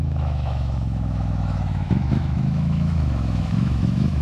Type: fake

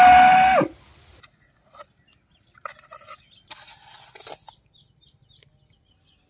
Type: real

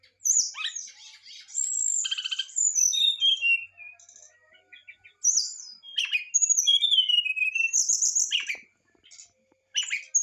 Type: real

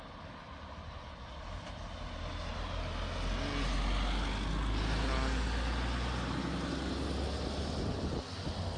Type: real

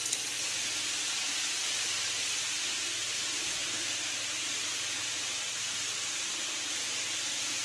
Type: real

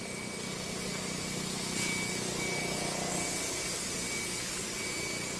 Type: real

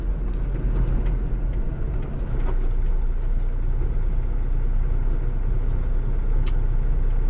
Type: real